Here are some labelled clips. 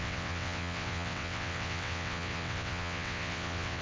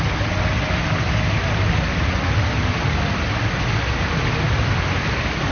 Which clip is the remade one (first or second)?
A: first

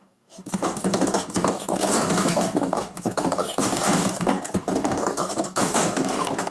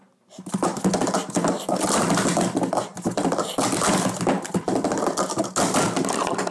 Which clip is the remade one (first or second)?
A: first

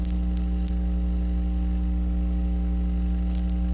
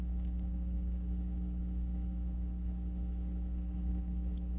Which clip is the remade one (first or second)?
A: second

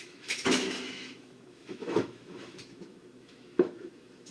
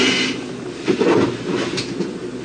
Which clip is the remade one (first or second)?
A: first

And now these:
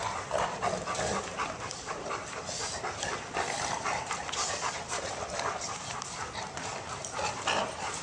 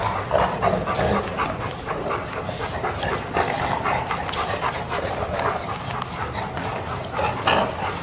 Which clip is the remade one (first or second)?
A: first